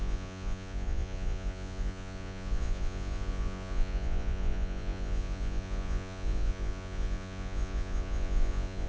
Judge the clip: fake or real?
fake